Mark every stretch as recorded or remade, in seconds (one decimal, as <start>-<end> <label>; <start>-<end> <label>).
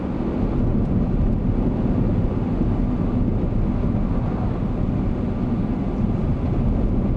0.0-7.2 recorded